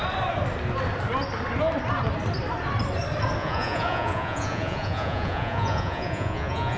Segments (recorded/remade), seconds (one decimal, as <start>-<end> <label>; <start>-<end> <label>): 0.0-3.4 recorded; 3.4-6.8 remade